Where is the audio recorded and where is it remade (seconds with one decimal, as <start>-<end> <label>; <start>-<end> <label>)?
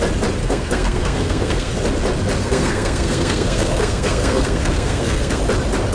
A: 0.0-0.4 recorded; 0.4-1.7 remade; 1.7-2.4 recorded; 2.4-5.4 remade; 5.4-5.9 recorded